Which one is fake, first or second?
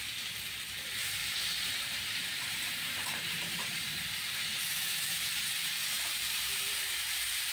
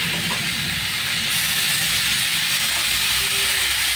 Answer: first